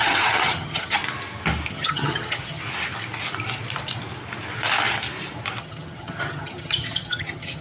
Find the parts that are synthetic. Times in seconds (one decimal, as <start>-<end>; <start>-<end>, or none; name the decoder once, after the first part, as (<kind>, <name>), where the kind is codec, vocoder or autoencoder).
0.0-1.0 (vocoder, HiFi-GAN); 1.7-2.6; 5.6-7.6